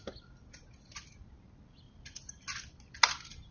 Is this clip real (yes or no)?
yes